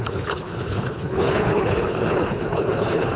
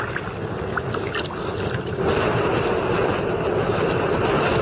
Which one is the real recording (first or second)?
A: second